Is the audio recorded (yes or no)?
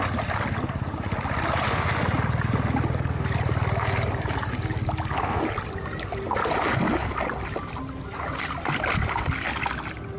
yes